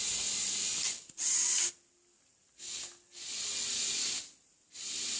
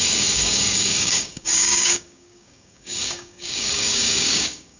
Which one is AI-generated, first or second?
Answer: second